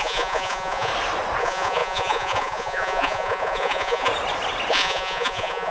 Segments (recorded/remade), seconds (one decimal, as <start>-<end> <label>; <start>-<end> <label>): 0.0-0.9 remade; 0.9-1.4 recorded; 1.4-4.1 remade; 4.1-4.7 recorded; 4.7-5.7 remade

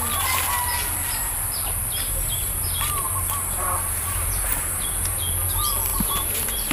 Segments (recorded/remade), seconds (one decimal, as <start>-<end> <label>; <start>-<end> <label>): 0.0-1.2 recorded; 1.2-5.2 remade; 5.2-5.9 recorded; 5.9-6.7 remade

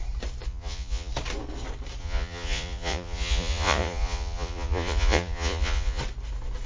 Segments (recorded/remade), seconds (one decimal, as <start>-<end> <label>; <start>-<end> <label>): 0.0-0.5 recorded; 0.5-1.1 remade; 1.1-2.0 recorded; 2.0-6.0 remade; 6.0-6.7 recorded